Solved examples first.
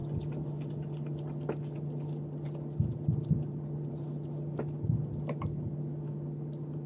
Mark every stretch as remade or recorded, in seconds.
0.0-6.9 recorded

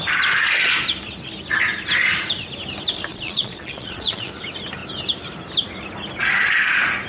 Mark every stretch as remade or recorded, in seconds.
0.0-3.1 recorded; 3.1-4.3 remade; 4.3-7.1 recorded

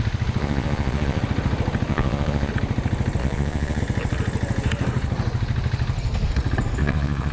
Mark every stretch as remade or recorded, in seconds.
0.0-0.4 recorded; 0.4-1.2 remade; 1.2-1.9 recorded; 1.9-2.5 remade; 2.5-3.2 recorded; 3.2-3.8 remade; 3.8-6.8 recorded; 6.8-7.3 remade

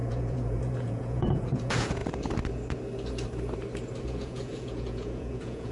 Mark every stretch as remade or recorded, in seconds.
0.0-2.0 remade; 2.0-4.0 recorded; 4.0-5.7 remade